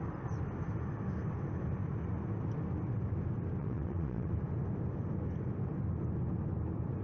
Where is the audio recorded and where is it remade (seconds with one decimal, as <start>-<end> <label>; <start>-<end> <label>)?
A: 0.0-3.6 recorded; 3.6-4.3 remade; 4.3-7.0 recorded